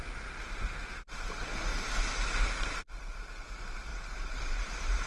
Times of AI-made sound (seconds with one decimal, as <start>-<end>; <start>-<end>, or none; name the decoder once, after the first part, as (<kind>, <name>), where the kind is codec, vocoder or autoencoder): 3.9-5.1 (vocoder, BigVGAN v2)